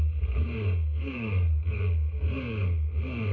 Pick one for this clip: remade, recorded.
remade